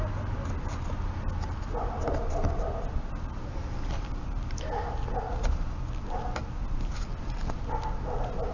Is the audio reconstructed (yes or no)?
no